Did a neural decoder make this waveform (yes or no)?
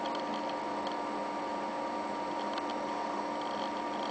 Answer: no